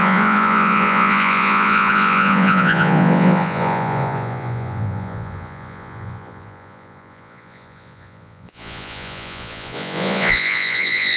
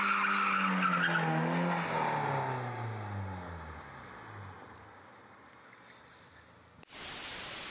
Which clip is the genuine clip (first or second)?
second